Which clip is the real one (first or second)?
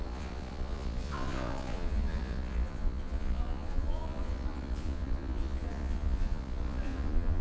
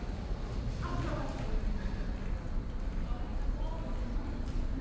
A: second